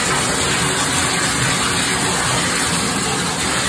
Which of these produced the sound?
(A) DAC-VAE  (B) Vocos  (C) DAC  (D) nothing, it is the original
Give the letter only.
D